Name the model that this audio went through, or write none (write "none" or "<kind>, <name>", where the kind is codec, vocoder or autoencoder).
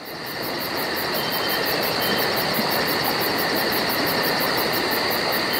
none